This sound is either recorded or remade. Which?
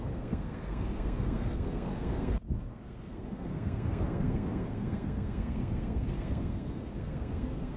remade